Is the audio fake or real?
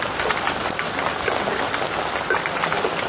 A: real